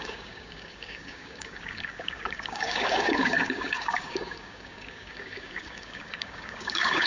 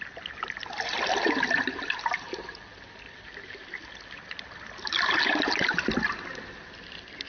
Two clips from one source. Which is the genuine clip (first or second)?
second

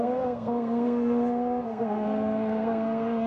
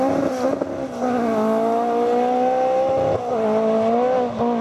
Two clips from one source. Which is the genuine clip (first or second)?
second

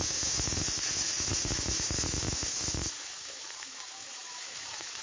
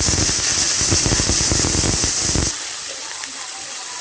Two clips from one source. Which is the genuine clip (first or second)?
second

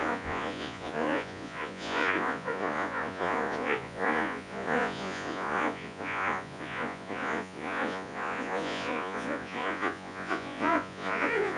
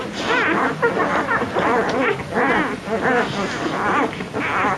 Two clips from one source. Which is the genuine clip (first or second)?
second